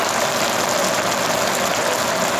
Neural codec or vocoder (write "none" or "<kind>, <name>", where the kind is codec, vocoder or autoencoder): none